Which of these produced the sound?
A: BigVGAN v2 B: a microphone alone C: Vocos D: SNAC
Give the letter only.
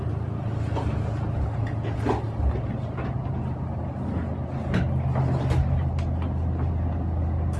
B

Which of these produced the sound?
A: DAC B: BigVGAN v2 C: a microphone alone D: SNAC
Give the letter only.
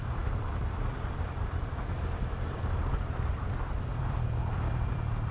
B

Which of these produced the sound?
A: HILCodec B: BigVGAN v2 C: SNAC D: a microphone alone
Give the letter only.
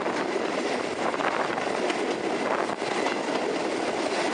D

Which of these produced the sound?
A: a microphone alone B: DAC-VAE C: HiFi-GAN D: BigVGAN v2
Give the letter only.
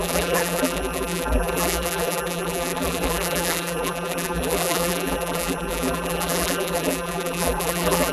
D